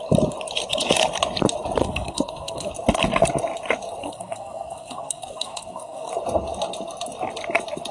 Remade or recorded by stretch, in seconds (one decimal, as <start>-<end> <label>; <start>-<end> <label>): 0.0-1.8 recorded; 1.8-2.7 remade; 2.7-4.0 recorded; 4.0-6.1 remade; 6.1-7.9 recorded